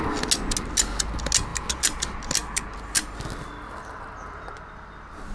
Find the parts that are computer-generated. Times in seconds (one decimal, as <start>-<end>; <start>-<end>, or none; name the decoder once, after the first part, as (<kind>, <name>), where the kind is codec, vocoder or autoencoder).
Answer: none